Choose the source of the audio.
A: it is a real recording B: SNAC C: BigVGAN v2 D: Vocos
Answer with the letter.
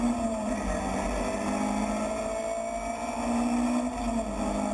A